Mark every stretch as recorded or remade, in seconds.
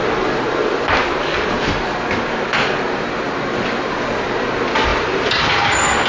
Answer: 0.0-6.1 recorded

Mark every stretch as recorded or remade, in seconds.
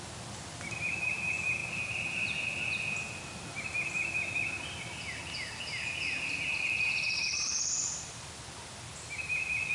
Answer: 0.0-9.7 recorded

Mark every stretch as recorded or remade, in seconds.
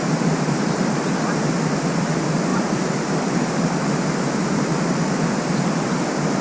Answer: 0.0-6.4 remade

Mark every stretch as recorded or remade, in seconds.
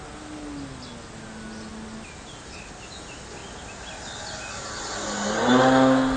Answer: 0.0-6.2 recorded